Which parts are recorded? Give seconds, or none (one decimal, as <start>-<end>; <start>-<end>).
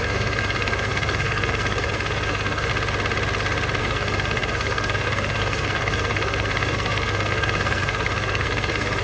2.7-3.8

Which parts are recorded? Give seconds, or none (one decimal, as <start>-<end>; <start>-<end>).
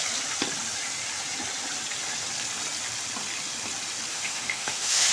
0.0-4.1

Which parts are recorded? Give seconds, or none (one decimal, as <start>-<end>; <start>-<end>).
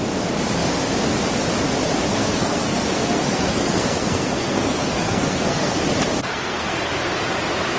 0.0-2.1; 5.8-6.3; 6.9-7.8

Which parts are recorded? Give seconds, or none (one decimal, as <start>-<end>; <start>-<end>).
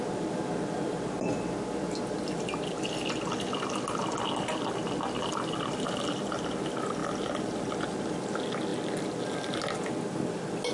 0.0-10.7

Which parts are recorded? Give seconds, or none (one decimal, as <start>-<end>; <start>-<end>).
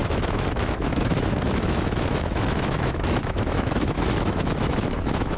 none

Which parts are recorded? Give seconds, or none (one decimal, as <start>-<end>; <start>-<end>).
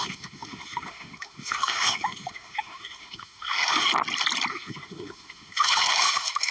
3.9-4.5